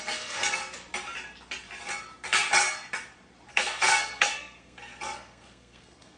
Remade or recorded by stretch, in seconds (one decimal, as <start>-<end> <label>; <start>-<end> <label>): 0.0-0.6 remade; 0.6-3.5 recorded; 3.5-6.2 remade

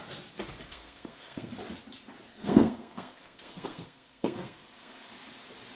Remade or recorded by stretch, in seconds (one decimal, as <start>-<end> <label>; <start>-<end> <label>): 0.0-0.7 recorded; 0.7-1.5 remade; 1.5-2.3 recorded; 2.3-5.1 remade; 5.1-5.7 recorded

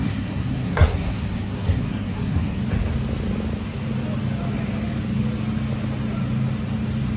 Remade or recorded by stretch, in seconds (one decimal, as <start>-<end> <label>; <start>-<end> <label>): 0.0-2.6 remade; 2.6-7.2 recorded

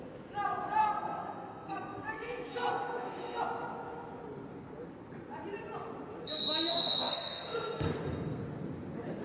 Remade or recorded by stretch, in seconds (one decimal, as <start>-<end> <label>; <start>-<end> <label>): 0.0-0.8 recorded; 0.8-3.4 remade; 3.4-6.7 recorded; 6.7-8.4 remade; 8.4-9.2 recorded

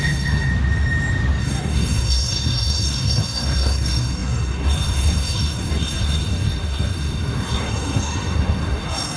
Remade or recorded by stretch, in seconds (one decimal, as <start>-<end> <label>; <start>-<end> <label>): 0.0-0.5 remade; 0.5-1.4 recorded; 1.4-9.2 remade

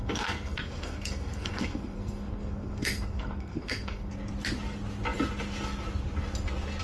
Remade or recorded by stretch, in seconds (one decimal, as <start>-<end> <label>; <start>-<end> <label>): 0.0-4.1 remade; 4.1-6.8 recorded